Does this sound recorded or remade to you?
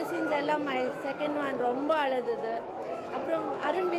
remade